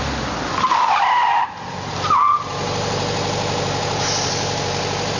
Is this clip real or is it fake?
real